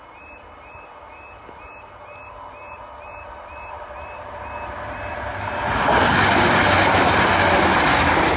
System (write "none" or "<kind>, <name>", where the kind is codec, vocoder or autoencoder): none